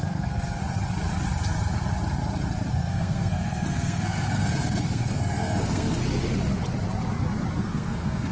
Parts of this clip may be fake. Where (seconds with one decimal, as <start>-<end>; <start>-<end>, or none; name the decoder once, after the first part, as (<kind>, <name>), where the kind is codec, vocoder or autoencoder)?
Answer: 0.0-0.6 (codec, SNAC); 2.7-6.0; 7.6-8.3